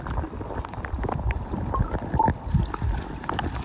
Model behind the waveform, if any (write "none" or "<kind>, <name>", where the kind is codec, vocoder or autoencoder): none